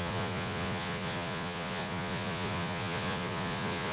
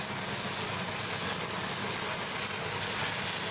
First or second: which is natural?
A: second